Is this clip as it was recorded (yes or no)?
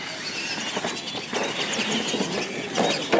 yes